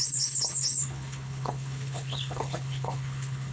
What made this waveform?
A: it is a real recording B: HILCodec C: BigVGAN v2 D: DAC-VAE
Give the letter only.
B